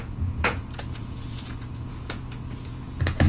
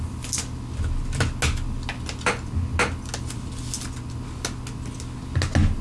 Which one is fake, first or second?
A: first